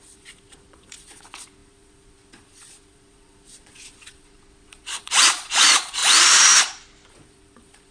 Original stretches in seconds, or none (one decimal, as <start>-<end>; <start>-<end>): 6.0-7.1

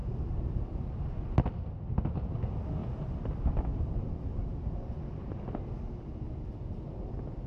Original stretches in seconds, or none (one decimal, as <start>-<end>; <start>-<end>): 1.2-2.8; 5.9-7.5

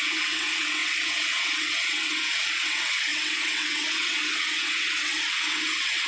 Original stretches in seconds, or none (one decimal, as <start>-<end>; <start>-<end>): none

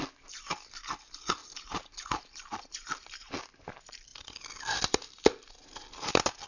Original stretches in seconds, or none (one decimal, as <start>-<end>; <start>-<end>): 0.0-1.4; 2.7-6.5